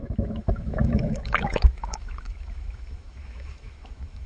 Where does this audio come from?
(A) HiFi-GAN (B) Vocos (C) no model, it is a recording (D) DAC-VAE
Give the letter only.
D